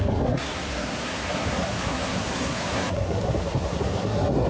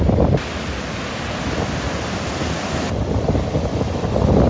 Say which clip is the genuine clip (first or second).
second